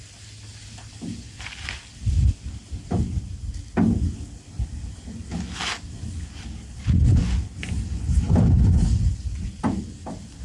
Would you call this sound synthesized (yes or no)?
no